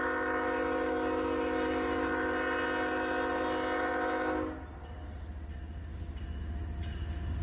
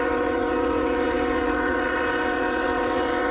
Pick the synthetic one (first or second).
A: second